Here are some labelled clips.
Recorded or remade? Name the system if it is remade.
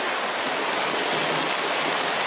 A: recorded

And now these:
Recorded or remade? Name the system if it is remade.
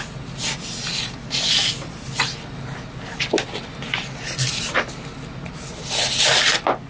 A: recorded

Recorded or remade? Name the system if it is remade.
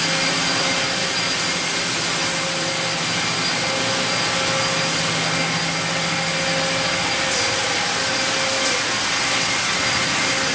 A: recorded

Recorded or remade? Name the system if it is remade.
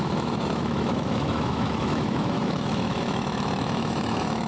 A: remade, autoencoder, DAC-VAE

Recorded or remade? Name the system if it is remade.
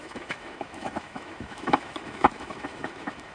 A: remade, autoencoder, DAC-VAE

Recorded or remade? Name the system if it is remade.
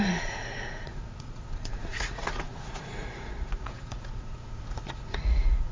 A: remade, vocoder, Vocos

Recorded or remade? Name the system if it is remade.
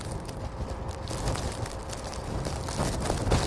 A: recorded